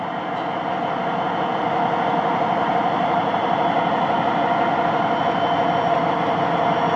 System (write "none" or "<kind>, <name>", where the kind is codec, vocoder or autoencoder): none